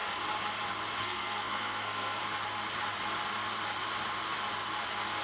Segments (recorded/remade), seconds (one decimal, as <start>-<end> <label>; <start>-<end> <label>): 0.0-1.0 recorded; 1.0-2.2 remade; 2.2-5.2 recorded